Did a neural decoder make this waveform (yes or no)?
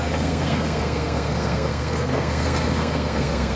yes